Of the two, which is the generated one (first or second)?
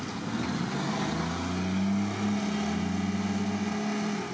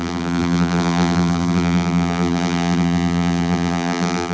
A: second